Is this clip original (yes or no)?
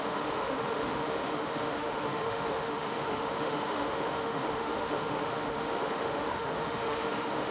no